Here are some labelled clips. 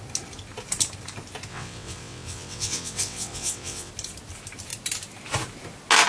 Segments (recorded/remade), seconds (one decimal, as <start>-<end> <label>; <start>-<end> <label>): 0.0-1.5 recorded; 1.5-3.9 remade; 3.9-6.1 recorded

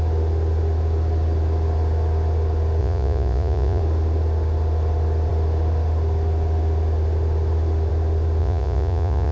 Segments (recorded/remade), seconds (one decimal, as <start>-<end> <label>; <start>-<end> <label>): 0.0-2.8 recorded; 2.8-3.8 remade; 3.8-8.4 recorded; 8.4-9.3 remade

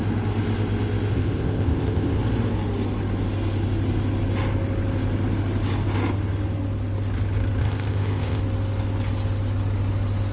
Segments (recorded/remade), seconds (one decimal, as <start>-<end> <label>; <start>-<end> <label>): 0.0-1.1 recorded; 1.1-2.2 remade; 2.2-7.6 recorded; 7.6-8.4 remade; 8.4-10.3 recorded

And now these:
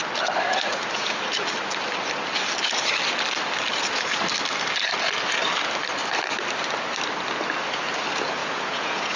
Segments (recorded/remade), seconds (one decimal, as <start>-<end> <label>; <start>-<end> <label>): 0.0-8.4 recorded; 8.4-9.2 remade

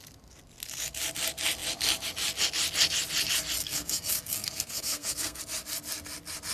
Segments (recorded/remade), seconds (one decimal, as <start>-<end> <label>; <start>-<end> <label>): 0.0-3.6 recorded; 3.6-5.4 remade; 5.4-6.5 recorded